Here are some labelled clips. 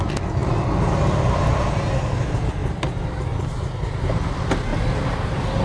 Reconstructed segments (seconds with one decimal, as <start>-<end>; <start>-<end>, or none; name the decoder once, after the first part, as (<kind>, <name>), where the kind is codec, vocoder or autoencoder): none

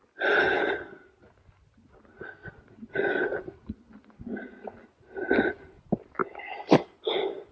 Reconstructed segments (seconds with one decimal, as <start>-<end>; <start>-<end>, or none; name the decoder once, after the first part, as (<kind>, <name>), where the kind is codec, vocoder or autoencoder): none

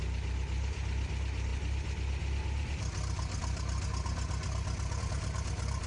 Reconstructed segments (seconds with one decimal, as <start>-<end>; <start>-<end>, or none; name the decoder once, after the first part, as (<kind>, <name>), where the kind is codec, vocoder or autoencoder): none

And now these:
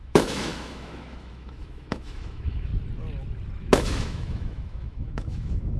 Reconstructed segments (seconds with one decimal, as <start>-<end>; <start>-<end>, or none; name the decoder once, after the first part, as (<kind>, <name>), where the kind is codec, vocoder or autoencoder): 0.0-2.7 (autoencoder, DAC-VAE); 3.6-5.8